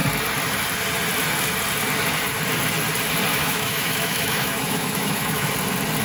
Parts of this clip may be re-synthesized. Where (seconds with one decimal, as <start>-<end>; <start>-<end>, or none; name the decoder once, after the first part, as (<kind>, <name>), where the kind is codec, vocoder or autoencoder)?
3.3-5.5 (autoencoder, DAC-VAE)